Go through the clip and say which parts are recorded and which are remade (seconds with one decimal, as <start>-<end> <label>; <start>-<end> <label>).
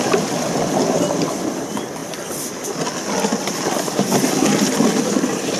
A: 0.0-5.6 recorded